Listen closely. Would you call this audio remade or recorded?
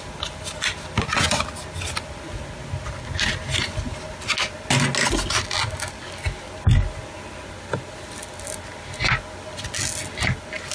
recorded